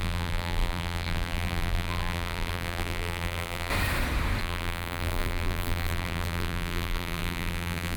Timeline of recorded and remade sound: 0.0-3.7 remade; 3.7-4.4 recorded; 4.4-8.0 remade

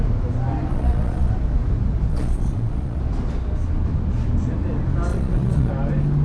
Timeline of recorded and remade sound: 0.0-0.7 recorded; 0.7-1.3 remade; 1.3-2.1 recorded; 2.1-3.0 remade; 3.0-5.1 recorded; 5.1-5.7 remade; 5.7-6.2 recorded

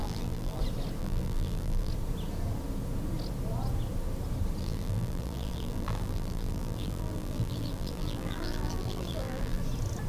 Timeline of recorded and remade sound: 0.0-0.6 remade; 0.6-1.0 recorded; 1.0-1.9 remade; 1.9-4.6 recorded; 4.6-9.6 remade; 9.6-10.1 recorded

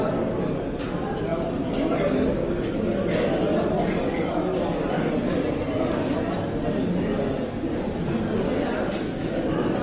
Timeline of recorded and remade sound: 0.0-9.8 recorded

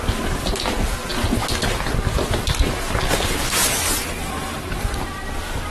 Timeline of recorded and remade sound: 0.0-5.7 recorded